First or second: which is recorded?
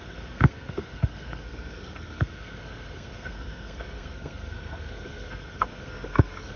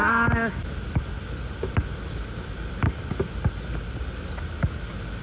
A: second